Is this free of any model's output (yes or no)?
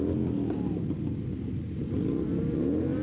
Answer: yes